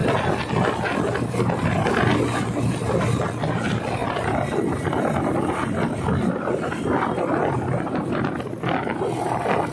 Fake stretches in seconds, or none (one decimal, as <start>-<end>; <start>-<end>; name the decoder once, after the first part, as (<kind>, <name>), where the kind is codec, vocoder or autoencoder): none